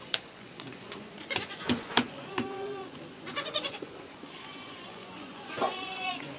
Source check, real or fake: fake